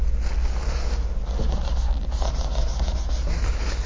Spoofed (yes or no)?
no